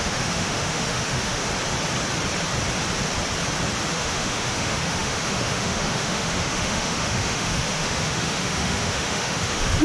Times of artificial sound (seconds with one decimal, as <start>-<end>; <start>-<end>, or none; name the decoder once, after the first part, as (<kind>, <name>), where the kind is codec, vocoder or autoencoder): 0.0-1.5 (autoencoder, DAC-VAE); 3.9-9.8